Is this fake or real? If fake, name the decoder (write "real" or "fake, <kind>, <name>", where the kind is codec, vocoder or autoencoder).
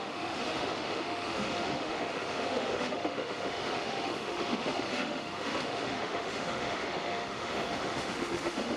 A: fake, autoencoder, DAC-VAE